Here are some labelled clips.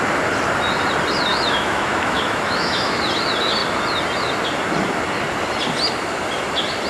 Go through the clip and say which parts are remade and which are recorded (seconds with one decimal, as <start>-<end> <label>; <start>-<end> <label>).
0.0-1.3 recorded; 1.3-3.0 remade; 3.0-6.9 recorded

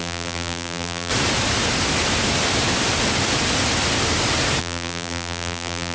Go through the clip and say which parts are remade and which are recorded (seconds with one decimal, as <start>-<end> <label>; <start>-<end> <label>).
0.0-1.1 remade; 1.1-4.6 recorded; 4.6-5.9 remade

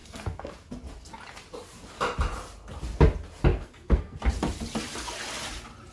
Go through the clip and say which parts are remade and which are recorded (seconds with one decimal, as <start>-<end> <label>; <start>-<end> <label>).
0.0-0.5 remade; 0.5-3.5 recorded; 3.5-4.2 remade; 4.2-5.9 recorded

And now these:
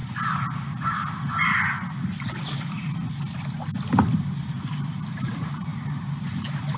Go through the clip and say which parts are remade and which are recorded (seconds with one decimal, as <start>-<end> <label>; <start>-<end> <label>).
0.0-4.1 recorded; 4.1-6.8 remade

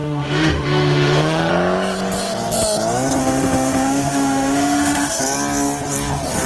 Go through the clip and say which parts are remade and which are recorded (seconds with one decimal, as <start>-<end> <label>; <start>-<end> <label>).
0.0-1.5 remade; 1.5-3.2 recorded; 3.2-5.2 remade; 5.2-6.5 recorded

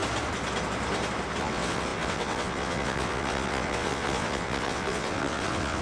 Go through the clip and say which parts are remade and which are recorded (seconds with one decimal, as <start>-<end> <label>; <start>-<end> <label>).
0.0-1.4 recorded; 1.4-5.8 remade